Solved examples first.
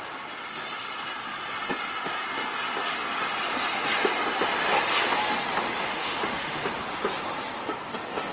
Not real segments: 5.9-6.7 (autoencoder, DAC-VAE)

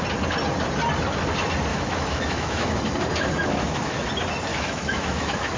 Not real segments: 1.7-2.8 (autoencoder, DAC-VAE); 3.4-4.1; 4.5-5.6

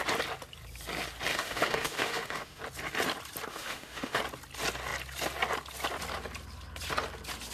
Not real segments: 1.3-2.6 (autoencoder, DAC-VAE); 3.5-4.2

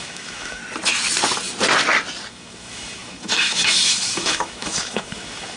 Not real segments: 0.0-0.6 (autoencoder, DAC-VAE); 2.3-5.6

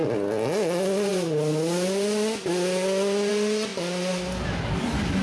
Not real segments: none

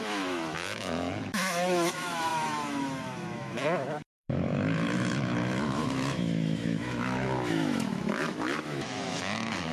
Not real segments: 0.0-9.7 (autoencoder, DAC-VAE)

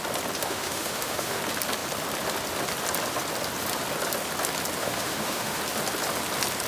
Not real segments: 0.4-1.4 (autoencoder, DAC-VAE); 4.8-5.6